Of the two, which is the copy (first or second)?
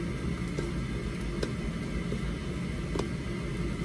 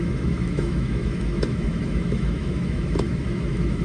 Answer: second